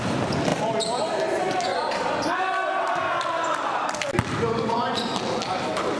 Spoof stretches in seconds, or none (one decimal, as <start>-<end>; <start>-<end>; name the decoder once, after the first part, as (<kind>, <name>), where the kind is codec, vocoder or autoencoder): none